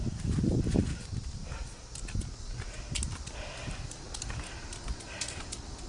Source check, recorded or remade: recorded